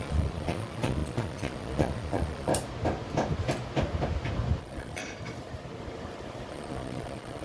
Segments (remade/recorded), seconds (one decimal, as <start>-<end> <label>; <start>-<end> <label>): 0.0-2.5 remade; 2.5-4.6 recorded; 4.6-5.0 remade; 5.0-6.5 recorded; 6.5-7.4 remade